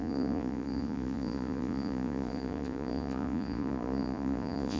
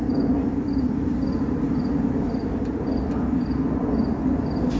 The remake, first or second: first